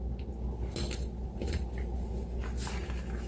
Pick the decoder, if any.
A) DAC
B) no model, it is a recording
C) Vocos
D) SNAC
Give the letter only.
B